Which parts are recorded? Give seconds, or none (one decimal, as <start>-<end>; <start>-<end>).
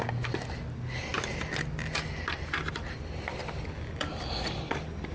0.0-5.1